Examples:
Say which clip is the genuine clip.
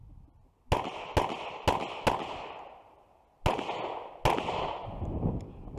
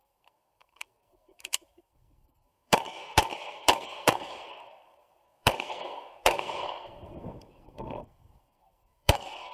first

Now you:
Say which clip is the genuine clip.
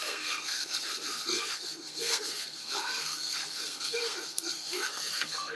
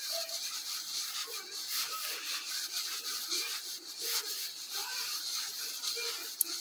second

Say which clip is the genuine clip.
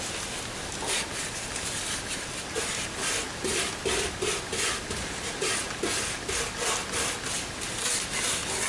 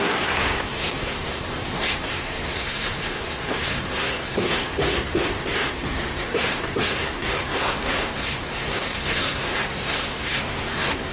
first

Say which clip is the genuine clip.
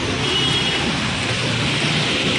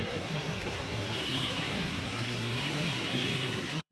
first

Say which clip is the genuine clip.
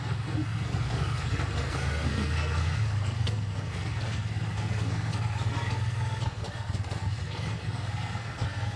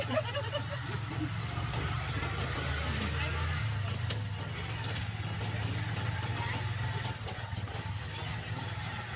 second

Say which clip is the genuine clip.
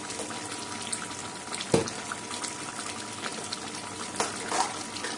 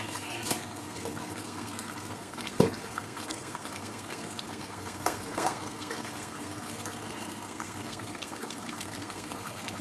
first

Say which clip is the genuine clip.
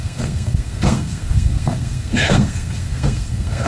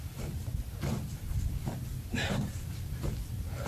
second